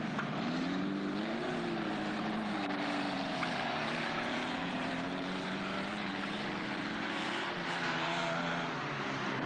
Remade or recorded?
remade